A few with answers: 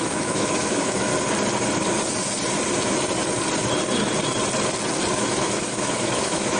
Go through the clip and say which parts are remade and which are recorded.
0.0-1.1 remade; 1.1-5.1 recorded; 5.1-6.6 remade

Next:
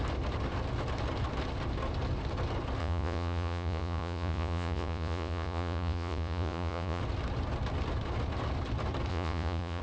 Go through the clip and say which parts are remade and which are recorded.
0.0-2.8 recorded; 2.8-7.0 remade; 7.0-9.1 recorded; 9.1-9.8 remade

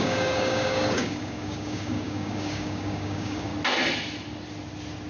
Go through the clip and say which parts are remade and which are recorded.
0.0-3.5 remade; 3.5-5.1 recorded

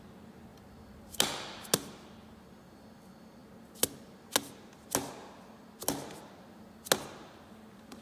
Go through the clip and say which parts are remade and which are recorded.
0.0-8.0 recorded

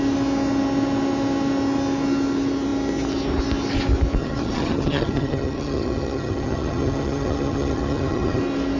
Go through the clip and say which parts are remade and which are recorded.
0.0-4.2 recorded; 4.2-8.4 remade; 8.4-8.8 recorded

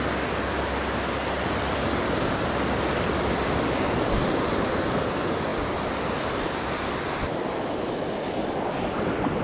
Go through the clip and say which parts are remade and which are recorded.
0.0-9.4 recorded

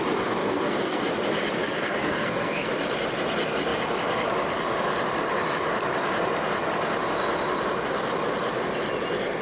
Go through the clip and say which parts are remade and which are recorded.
0.0-0.4 recorded; 0.4-1.0 remade; 1.0-1.6 recorded; 1.6-2.7 remade; 2.7-9.4 recorded